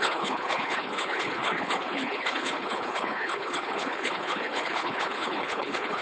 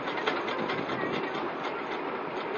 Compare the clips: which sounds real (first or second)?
second